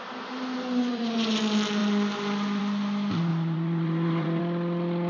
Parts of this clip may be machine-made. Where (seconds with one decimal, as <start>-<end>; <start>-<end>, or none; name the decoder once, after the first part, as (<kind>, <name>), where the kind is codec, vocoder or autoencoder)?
0.9-1.4 (vocoder, Vocos); 3.3-4.4